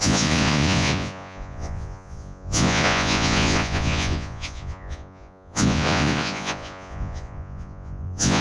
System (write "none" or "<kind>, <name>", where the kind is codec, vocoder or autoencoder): vocoder, Vocos